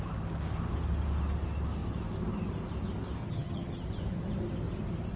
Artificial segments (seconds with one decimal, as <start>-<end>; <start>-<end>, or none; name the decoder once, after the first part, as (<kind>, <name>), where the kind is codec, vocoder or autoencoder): 3.2-3.8 (vocoder, HiFi-GAN)

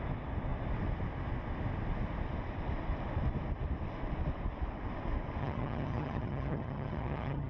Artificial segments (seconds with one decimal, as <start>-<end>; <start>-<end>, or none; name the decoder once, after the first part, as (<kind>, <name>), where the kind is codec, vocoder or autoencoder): 5.4-7.5 (vocoder, HiFi-GAN)

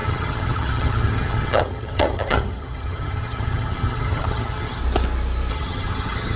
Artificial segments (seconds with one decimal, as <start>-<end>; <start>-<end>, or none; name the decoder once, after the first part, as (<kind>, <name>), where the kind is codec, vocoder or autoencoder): 0.0-4.8 (vocoder, HiFi-GAN); 5.5-6.4

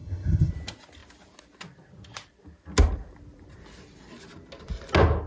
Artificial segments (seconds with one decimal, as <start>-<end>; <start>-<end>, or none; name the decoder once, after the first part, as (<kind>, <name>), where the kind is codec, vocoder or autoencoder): 0.0-0.5 (vocoder, HiFi-GAN)

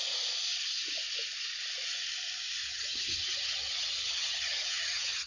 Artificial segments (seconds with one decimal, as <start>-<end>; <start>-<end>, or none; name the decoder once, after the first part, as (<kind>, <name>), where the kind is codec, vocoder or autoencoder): 2.6-5.3 (vocoder, HiFi-GAN)

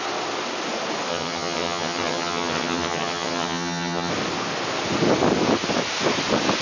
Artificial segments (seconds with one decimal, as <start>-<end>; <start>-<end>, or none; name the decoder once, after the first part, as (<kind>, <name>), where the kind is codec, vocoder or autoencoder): 1.1-4.1 (vocoder, HiFi-GAN)

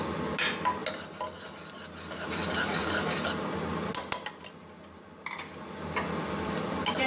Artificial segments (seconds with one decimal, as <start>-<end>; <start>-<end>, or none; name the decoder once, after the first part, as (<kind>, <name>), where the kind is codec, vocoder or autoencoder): none